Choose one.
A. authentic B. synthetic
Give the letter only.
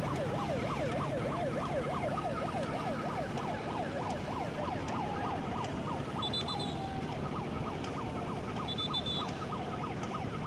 A